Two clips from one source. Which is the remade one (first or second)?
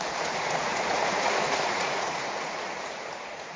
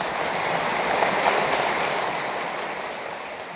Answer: first